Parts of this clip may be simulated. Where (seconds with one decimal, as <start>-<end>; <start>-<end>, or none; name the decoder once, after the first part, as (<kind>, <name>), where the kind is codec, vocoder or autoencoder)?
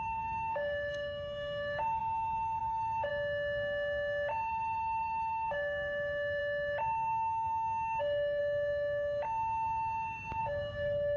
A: 0.0-3.1 (codec, DAC); 4.5-6.4; 8.0-8.4; 10.4-11.2